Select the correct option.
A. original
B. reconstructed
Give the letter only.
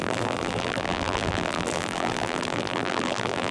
B